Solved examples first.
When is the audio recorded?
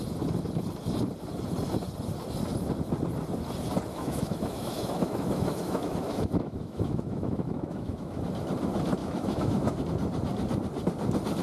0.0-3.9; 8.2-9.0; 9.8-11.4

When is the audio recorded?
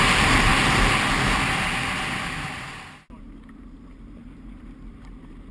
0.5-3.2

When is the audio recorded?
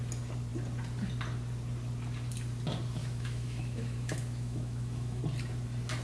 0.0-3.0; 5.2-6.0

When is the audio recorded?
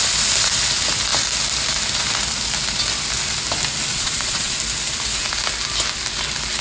0.0-3.9; 4.6-6.6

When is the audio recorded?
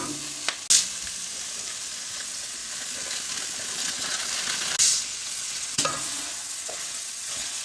0.0-2.1; 2.6-3.8; 4.2-4.8